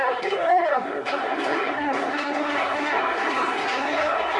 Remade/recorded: remade